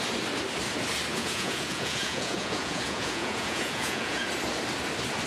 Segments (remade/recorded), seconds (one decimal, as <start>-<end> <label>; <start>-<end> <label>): 0.0-1.1 recorded; 1.1-4.3 remade; 4.3-5.3 recorded